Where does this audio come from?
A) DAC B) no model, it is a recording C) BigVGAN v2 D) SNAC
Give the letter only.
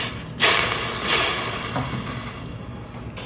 B